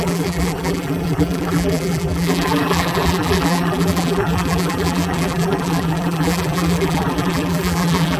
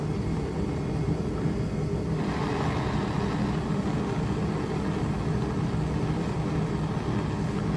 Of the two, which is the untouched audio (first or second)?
second